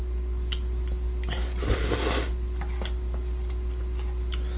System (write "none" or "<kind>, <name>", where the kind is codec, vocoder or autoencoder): none